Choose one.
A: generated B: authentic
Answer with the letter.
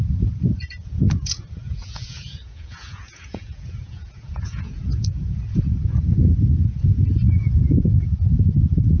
A